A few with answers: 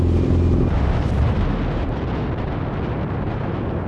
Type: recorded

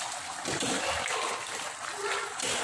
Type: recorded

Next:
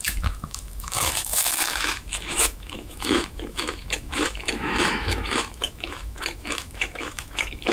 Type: remade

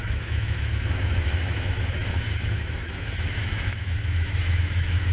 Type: remade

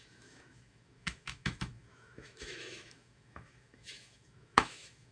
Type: remade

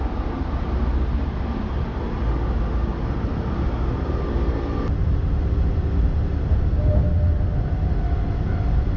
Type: recorded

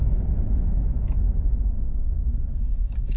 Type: remade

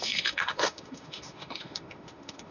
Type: remade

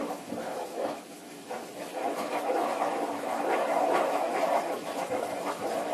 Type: remade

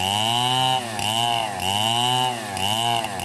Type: recorded